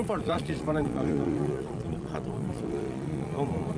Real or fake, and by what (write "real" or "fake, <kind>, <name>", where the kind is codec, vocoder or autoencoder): fake, vocoder, Vocos